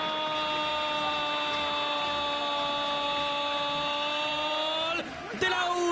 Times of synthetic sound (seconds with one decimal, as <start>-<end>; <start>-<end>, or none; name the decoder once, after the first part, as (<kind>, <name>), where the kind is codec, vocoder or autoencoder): 4.3-5.0 (vocoder, BigVGAN v2)